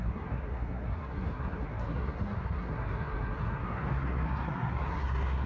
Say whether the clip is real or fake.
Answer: fake